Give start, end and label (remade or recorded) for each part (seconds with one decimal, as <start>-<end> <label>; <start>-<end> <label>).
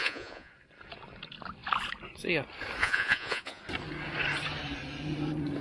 0.0-0.5 remade; 0.5-2.8 recorded; 2.8-3.6 remade; 3.6-5.6 recorded